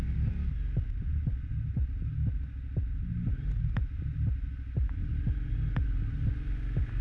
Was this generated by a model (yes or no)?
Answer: no